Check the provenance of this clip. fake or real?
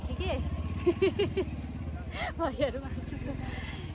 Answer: real